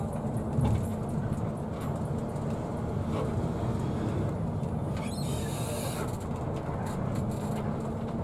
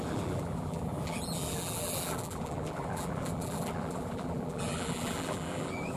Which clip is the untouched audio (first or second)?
first